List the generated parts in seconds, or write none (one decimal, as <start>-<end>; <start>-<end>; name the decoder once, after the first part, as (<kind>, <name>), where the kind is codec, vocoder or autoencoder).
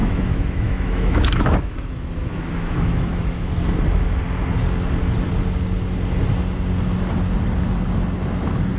0.0-3.5 (autoencoder, DAC-VAE)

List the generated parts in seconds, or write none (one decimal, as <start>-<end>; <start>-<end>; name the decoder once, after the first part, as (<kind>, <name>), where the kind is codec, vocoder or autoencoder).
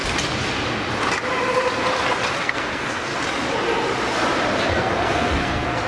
2.4-3.1 (codec, SNAC); 4.7-5.9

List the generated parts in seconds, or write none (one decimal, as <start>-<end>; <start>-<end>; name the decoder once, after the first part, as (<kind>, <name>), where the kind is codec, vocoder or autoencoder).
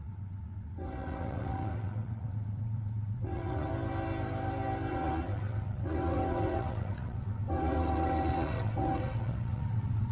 0.0-3.7 (vocoder, WaveNeXt); 4.9-10.1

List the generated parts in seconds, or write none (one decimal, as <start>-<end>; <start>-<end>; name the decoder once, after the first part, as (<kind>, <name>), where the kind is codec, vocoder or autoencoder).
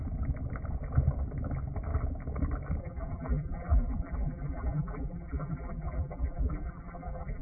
2.8-7.4 (vocoder, BigVGAN v2)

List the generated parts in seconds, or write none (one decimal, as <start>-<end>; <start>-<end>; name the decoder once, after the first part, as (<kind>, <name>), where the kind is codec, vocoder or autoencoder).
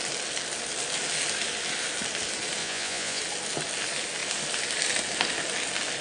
2.6-3.2 (vocoder, Vocos)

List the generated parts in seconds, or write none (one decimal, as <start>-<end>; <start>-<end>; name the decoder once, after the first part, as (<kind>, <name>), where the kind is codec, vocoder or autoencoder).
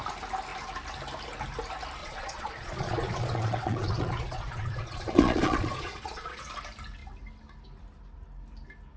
2.0-6.5 (vocoder, Vocos)